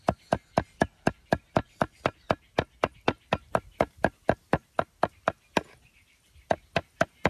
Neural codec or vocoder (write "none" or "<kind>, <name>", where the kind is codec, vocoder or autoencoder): none